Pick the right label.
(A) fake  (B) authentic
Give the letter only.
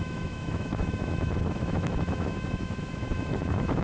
A